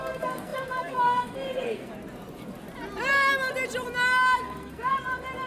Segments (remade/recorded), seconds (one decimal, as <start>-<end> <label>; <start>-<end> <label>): 0.0-1.9 remade; 1.9-4.4 recorded; 4.4-4.9 remade; 4.9-5.5 recorded